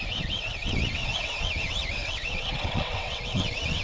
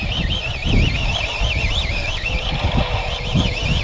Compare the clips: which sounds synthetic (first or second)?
first